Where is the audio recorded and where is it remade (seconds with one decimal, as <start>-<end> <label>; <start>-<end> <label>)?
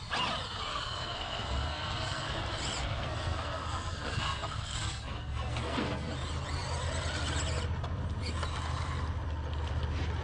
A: 0.0-0.7 recorded; 0.7-2.4 remade; 2.4-2.8 recorded; 2.8-6.1 remade; 6.1-10.2 recorded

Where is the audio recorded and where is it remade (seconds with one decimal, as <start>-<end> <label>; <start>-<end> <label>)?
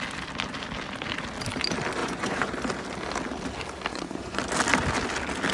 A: 0.0-2.0 recorded; 2.0-2.5 remade; 2.5-3.9 recorded; 3.9-4.4 remade; 4.4-5.5 recorded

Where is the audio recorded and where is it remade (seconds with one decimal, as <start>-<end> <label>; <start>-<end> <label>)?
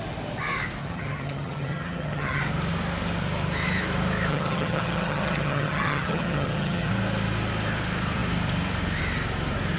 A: 0.0-0.8 recorded; 0.8-2.4 remade; 2.4-4.3 recorded; 4.3-6.9 remade; 6.9-9.8 recorded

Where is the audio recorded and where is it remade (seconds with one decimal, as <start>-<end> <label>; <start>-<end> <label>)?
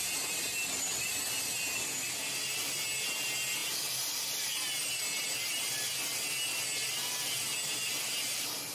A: 0.0-8.7 recorded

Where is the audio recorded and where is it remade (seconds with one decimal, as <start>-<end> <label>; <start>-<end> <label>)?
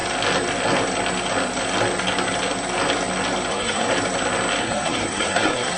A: 0.0-3.5 recorded; 3.5-3.9 remade; 3.9-4.6 recorded; 4.6-5.8 remade